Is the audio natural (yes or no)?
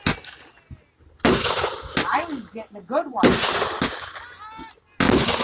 yes